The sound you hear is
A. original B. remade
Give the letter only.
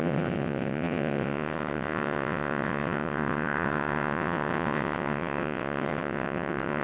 B